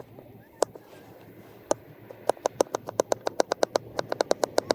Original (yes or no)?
no